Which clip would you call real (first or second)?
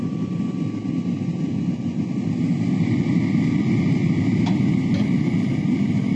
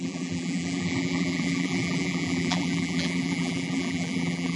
first